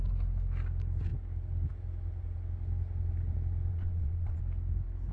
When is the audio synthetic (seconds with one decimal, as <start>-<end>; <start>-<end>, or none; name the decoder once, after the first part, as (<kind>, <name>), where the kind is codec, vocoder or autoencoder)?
3.7-4.4 (vocoder, Vocos)